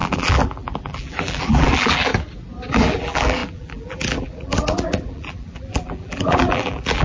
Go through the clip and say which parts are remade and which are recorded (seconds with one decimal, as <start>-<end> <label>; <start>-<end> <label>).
0.0-2.1 remade; 2.1-2.7 recorded; 2.7-7.0 remade